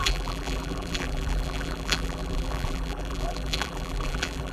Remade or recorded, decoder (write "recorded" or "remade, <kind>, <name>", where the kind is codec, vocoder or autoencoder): remade, vocoder, BigVGAN v2